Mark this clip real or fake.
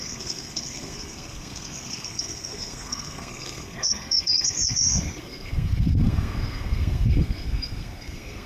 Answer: fake